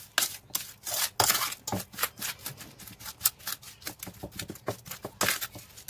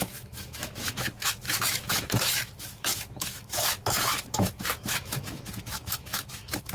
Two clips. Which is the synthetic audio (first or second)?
second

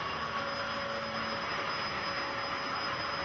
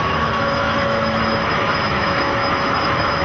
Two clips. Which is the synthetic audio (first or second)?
second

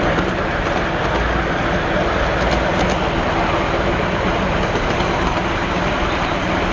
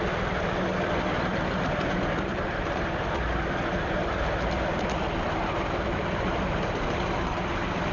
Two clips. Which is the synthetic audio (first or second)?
second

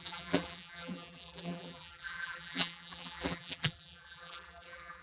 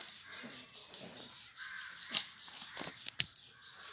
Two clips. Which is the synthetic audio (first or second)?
first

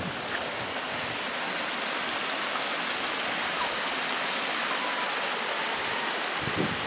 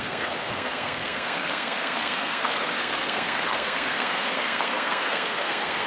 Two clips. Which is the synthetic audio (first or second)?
second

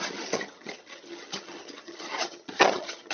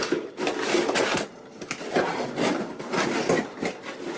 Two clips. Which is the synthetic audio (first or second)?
first